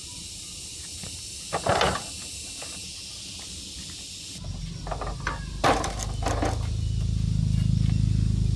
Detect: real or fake real